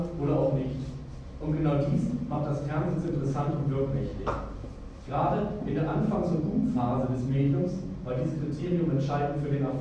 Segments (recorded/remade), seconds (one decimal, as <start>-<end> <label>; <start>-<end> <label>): 0.0-4.1 recorded; 4.1-5.1 remade; 5.1-9.8 recorded